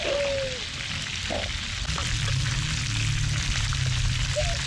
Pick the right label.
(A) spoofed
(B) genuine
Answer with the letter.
B